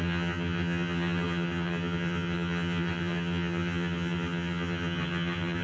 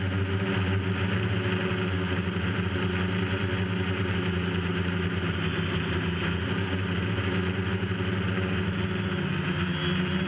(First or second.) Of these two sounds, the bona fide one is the second